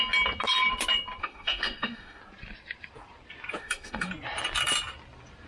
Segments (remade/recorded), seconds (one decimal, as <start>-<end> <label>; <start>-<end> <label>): 0.0-1.2 recorded; 1.2-2.2 remade; 2.2-3.6 recorded; 3.6-4.1 remade; 4.1-5.5 recorded

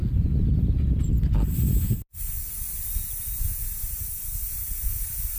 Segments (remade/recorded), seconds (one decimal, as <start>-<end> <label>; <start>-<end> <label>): 0.0-2.9 recorded; 2.9-4.7 remade; 4.7-5.4 recorded